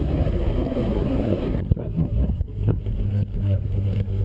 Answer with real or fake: fake